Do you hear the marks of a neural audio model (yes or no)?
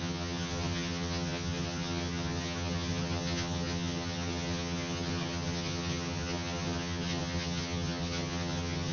yes